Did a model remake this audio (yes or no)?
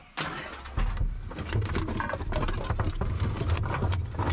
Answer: no